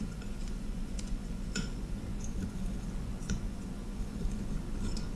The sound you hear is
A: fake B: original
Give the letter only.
A